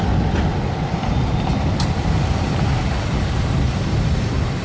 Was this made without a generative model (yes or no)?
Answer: yes